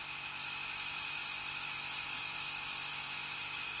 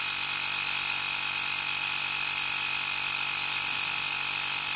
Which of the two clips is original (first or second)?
second